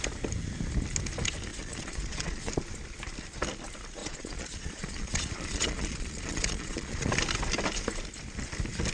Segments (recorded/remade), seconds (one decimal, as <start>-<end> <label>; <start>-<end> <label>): 0.0-1.5 recorded; 1.5-2.5 remade; 2.5-4.0 recorded; 4.0-7.1 remade; 7.1-8.9 recorded